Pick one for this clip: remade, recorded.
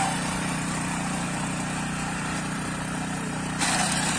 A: remade